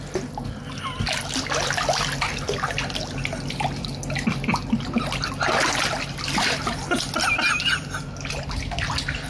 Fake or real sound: real